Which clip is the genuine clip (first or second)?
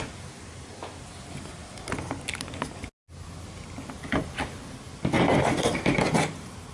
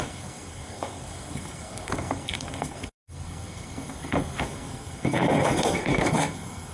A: first